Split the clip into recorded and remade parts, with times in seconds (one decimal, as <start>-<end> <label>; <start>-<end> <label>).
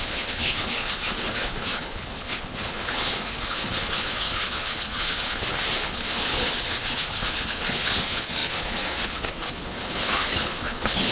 0.0-11.1 remade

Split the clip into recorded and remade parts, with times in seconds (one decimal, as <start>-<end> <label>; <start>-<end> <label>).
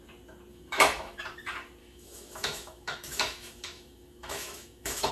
0.0-0.5 recorded; 0.5-1.2 remade; 1.2-1.8 recorded; 1.8-5.1 remade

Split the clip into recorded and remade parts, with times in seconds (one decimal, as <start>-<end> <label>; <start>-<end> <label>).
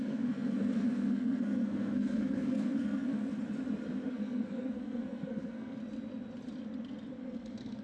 0.0-3.3 remade; 3.3-4.1 recorded; 4.1-5.8 remade; 5.8-7.2 recorded; 7.2-7.8 remade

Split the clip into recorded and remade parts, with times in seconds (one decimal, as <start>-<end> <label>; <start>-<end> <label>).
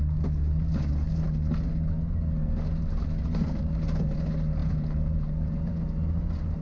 0.0-4.6 recorded; 4.6-5.8 remade; 5.8-6.6 recorded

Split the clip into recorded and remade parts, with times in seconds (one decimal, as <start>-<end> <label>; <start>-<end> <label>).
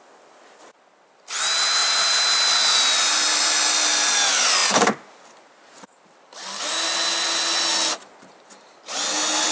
0.0-9.5 recorded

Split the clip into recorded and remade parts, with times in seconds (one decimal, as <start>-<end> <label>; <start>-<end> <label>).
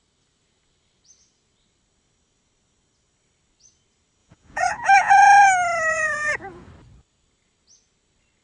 0.0-4.2 recorded; 4.2-5.4 remade; 5.4-5.9 recorded; 5.9-6.7 remade; 6.7-8.4 recorded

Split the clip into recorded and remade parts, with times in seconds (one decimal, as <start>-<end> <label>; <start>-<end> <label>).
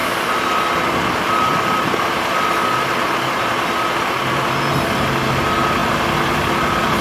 0.0-7.0 recorded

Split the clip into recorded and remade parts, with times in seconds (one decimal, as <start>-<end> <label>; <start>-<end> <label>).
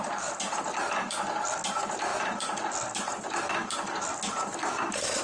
0.0-5.2 recorded